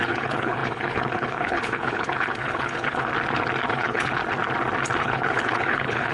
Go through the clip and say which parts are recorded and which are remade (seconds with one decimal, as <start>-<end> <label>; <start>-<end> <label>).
0.0-3.1 remade; 3.1-3.7 recorded; 3.7-4.2 remade; 4.2-5.0 recorded; 5.0-6.1 remade